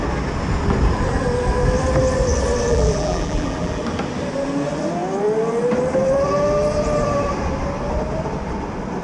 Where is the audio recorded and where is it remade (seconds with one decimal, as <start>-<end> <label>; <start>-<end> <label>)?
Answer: 0.0-2.7 recorded; 2.7-3.8 remade; 3.8-9.0 recorded